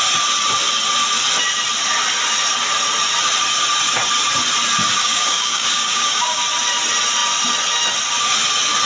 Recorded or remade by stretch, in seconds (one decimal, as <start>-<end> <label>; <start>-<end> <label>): 0.0-5.0 recorded; 5.0-6.4 remade; 6.4-8.9 recorded